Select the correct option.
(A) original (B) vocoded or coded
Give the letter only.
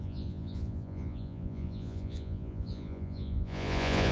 B